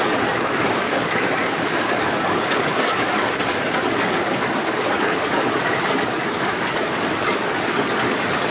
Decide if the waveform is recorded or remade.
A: remade